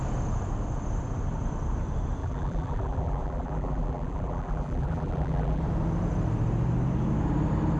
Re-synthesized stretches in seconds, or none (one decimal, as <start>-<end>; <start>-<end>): 2.2-5.6

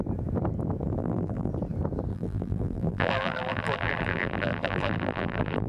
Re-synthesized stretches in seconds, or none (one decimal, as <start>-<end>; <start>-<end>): 1.0-1.5; 2.1-5.7